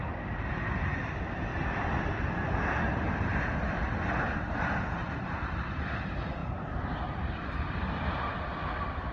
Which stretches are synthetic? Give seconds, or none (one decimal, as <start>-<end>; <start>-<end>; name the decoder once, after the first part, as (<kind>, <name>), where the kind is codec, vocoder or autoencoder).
1.5-2.2 (vocoder, BigVGAN v2); 5.0-5.9; 6.4-8.6